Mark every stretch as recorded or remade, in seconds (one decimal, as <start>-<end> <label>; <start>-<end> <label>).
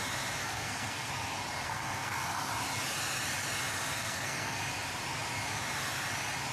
0.0-0.4 recorded; 0.4-1.1 remade; 1.1-1.6 recorded; 1.6-2.5 remade; 2.5-4.0 recorded; 4.0-4.6 remade; 4.6-6.5 recorded